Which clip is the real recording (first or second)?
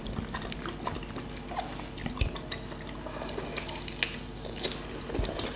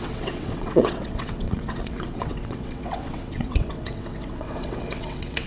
first